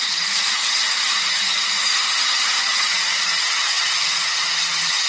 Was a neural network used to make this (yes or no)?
yes